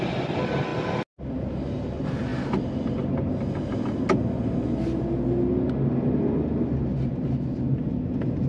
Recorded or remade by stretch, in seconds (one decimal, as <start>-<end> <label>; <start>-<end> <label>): 0.0-8.5 recorded